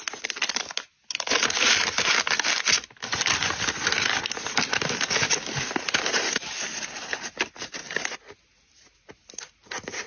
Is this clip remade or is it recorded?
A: recorded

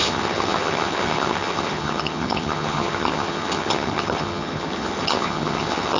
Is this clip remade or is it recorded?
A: remade